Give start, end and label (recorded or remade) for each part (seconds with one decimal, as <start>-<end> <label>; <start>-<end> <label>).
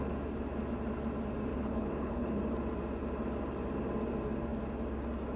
0.0-1.5 recorded; 1.5-2.4 remade; 2.4-5.4 recorded